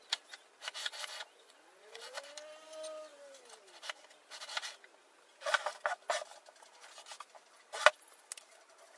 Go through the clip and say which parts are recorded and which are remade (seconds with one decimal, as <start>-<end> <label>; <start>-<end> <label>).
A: 0.0-0.8 recorded; 0.8-2.2 remade; 2.2-9.0 recorded